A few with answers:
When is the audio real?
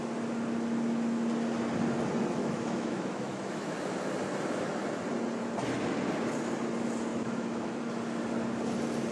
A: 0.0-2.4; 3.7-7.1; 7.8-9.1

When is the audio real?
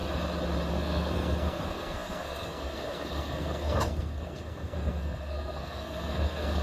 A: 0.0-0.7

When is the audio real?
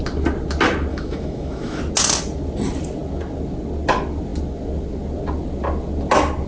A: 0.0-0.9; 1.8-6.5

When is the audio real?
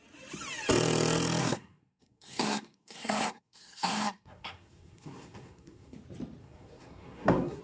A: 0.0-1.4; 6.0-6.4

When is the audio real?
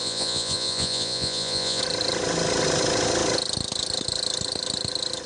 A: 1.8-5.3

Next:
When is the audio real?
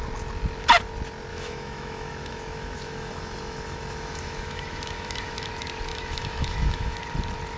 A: 0.0-1.3; 5.5-5.9; 7.0-7.6